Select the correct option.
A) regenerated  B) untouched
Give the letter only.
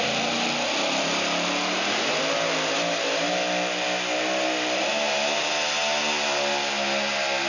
B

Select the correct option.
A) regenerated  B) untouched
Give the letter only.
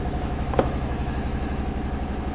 A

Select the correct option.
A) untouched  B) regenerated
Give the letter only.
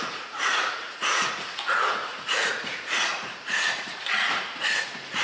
B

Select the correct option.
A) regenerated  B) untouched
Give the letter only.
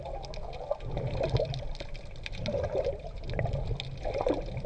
B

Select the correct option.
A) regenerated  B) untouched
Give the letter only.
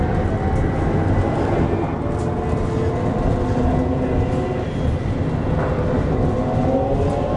B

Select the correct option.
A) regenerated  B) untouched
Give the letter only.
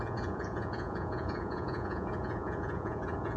A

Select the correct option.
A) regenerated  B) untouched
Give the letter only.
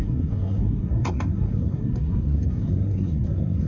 A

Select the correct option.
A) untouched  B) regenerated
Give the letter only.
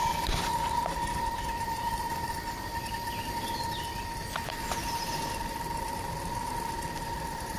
B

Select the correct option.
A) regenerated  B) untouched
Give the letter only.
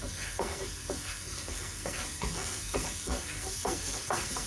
A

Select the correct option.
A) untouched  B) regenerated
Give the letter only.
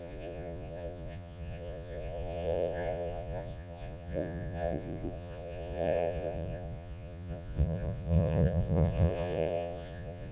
B